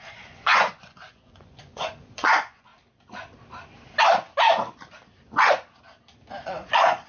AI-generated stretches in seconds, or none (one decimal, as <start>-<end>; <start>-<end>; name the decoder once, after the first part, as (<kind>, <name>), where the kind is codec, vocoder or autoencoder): 0.0-2.7 (vocoder, Vocos); 6.4-7.1